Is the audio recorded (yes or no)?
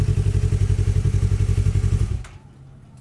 yes